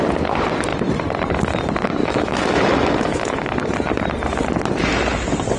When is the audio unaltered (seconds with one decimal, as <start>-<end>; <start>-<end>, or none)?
0.0-2.0; 3.7-5.6